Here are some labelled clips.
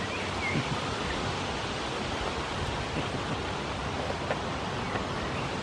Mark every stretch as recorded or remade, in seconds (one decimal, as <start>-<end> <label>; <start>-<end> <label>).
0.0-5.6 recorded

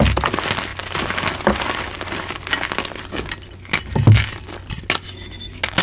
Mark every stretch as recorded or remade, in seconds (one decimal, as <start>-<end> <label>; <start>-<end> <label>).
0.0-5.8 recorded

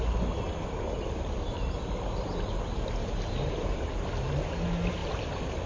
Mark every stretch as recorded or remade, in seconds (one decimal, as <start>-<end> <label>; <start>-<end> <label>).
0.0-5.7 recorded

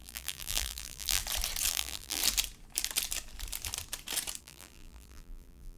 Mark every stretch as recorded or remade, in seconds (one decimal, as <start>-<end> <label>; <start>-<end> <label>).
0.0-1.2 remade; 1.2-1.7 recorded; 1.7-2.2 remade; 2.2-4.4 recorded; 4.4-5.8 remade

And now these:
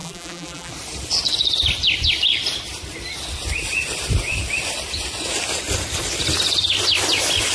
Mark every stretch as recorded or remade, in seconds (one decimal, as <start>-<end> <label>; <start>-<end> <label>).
0.0-0.7 remade; 0.7-7.5 recorded

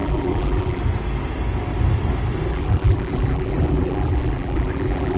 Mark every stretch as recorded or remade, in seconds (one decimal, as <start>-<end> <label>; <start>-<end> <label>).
0.0-0.8 remade; 0.8-2.5 recorded; 2.5-5.2 remade

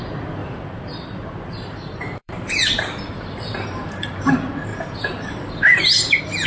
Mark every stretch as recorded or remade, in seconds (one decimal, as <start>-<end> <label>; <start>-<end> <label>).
0.0-0.4 recorded; 0.4-4.3 remade; 4.3-6.5 recorded